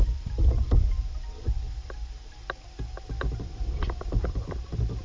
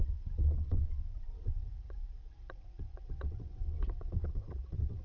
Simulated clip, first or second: second